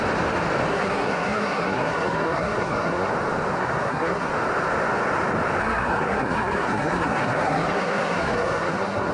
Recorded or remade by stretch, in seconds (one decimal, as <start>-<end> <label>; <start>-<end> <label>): 0.0-0.7 recorded; 0.7-3.1 remade; 3.1-3.6 recorded; 3.6-4.3 remade; 4.3-5.6 recorded; 5.6-9.1 remade